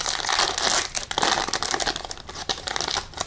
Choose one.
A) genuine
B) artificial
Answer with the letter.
A